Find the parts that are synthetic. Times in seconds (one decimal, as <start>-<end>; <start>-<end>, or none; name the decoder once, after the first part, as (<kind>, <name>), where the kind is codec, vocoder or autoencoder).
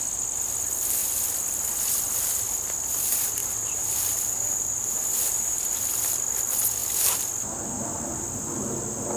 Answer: 3.4-5.7 (vocoder, BigVGAN v2)